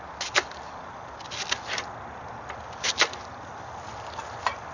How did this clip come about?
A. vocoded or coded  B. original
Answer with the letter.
B